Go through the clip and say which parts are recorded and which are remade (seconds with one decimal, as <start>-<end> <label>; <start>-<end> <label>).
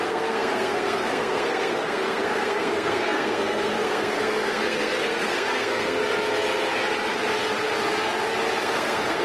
0.0-6.0 remade; 6.0-8.6 recorded; 8.6-9.2 remade